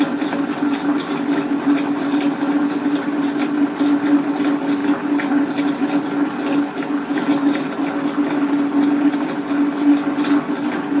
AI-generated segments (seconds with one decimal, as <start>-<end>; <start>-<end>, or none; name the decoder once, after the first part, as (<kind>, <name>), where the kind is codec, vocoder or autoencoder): none